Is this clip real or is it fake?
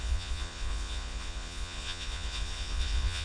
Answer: fake